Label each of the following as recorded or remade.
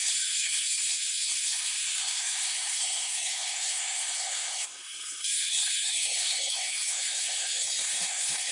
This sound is remade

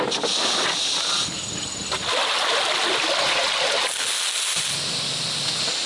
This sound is recorded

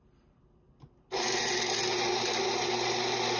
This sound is recorded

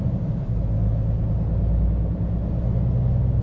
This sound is recorded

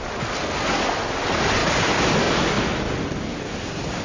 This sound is recorded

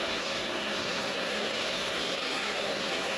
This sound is remade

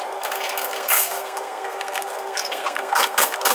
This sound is remade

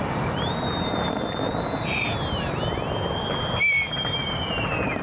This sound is recorded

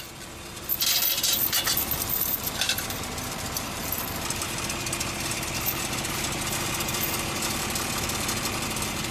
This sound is remade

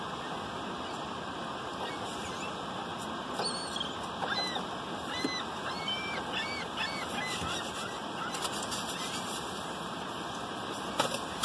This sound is recorded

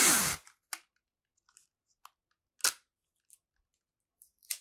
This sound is recorded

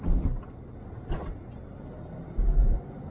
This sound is recorded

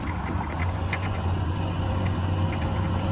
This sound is remade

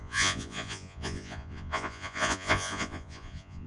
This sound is remade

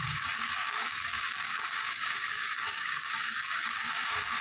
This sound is remade